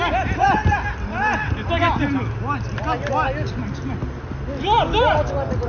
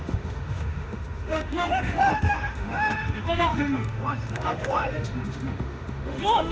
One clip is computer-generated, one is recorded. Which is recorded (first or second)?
first